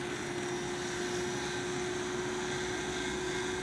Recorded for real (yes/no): yes